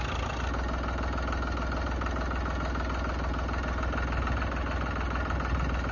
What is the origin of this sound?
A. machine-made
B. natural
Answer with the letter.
B